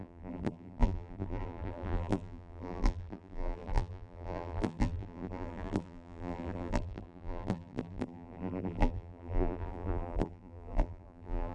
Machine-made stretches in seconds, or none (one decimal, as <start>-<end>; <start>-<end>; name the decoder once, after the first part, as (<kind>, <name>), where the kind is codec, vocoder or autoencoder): 0.0-11.5 (vocoder, BigVGAN v2)